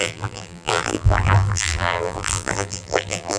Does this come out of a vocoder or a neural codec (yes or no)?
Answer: yes